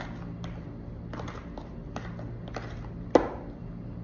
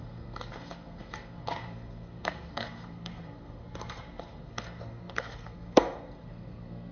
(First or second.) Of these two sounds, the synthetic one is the second